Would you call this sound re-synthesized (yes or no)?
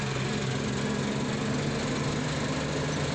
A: no